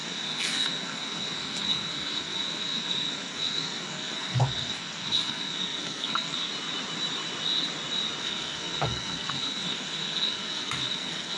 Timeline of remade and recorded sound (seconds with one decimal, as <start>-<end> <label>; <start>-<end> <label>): 0.0-6.5 remade; 6.5-8.2 recorded; 8.2-11.4 remade